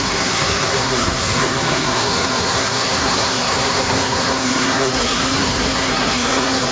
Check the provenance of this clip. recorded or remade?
remade